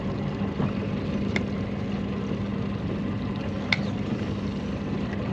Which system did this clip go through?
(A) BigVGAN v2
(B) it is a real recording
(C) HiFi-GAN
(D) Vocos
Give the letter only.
B